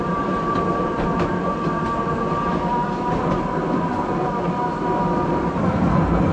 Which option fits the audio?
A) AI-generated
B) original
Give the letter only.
B